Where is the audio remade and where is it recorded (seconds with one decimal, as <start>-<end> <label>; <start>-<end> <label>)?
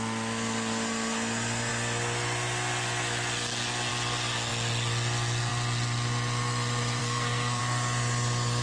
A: 0.0-7.0 recorded; 7.0-7.6 remade; 7.6-8.6 recorded